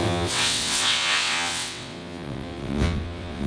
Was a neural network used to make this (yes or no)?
yes